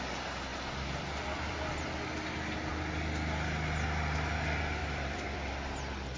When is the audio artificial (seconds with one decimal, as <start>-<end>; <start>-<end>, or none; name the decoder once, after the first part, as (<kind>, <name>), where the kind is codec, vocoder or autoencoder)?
4.8-5.5 (vocoder, BigVGAN v2)